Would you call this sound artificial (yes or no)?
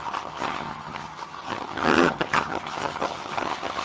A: yes